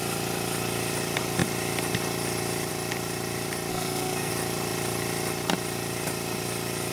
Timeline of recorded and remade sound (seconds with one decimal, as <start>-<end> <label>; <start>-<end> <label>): 0.0-3.7 recorded; 3.7-4.3 remade; 4.3-6.9 recorded